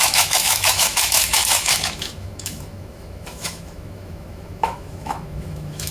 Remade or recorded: remade